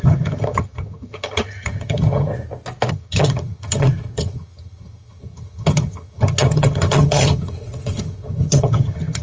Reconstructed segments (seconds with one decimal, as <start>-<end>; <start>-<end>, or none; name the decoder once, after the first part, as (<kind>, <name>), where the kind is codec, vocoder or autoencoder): 0.0-2.3 (vocoder, HiFi-GAN); 2.9-9.2

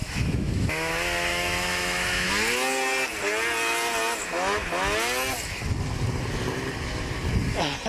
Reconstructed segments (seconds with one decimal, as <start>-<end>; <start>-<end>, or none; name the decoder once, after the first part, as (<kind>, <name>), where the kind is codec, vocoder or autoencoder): 0.0-0.9 (autoencoder, DAC-VAE); 1.3-2.3

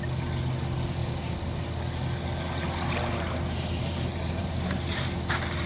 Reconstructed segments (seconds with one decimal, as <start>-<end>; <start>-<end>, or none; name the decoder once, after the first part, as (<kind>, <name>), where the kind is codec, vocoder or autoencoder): none

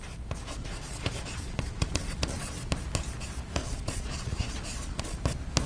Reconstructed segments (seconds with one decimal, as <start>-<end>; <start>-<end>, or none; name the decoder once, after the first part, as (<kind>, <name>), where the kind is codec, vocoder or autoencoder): 0.6-2.5 (vocoder, Vocos); 3.6-5.2

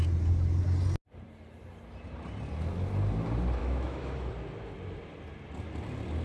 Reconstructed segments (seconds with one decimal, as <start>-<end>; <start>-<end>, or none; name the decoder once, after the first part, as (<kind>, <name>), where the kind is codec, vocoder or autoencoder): 3.6-4.3 (autoencoder, DAC-VAE)

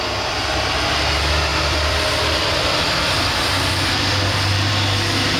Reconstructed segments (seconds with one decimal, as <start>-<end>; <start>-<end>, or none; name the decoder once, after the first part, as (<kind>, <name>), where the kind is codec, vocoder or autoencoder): 1.5-4.7 (vocoder, BigVGAN v2)

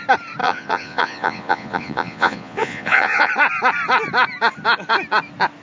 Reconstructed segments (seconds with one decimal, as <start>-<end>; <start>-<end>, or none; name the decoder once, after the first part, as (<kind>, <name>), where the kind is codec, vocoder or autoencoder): 0.4-3.3 (vocoder, Vocos)